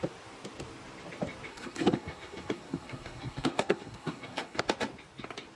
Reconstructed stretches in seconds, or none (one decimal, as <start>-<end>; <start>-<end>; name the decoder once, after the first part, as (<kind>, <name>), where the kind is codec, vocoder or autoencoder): 1.5-4.6 (codec, SNAC)